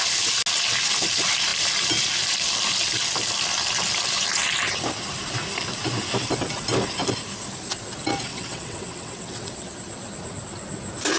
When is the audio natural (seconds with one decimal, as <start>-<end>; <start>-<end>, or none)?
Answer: 0.0-8.3; 9.7-11.2